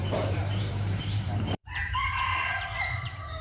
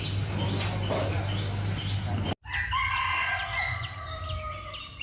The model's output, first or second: first